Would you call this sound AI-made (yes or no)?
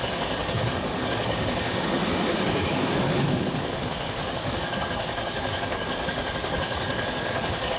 yes